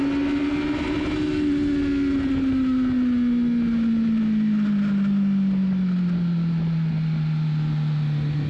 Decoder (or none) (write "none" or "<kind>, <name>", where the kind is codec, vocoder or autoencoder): none